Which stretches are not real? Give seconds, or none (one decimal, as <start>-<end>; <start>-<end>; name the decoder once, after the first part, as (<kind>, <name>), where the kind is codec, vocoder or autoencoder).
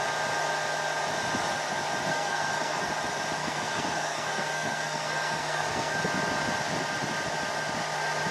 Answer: 2.1-2.9 (codec, SNAC); 3.4-6.0